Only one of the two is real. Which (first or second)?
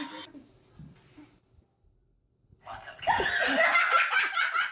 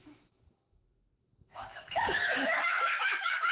first